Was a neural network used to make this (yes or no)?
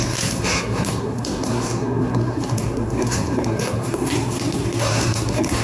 yes